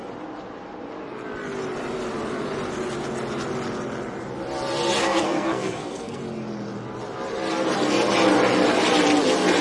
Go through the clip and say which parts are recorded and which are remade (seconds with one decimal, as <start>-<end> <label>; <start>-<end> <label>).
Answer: 0.0-5.0 recorded; 5.0-6.2 remade; 6.2-9.6 recorded